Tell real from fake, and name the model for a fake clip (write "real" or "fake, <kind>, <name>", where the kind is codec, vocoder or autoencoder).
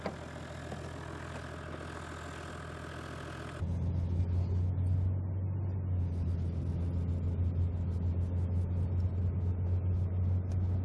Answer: real